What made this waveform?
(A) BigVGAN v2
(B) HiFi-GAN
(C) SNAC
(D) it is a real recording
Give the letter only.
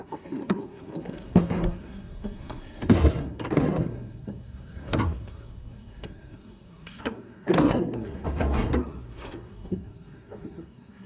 C